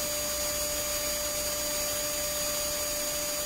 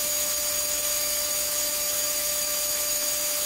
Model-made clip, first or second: second